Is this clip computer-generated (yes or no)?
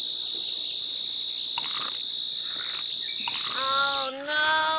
no